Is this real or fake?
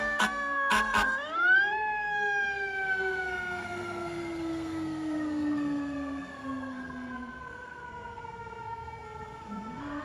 fake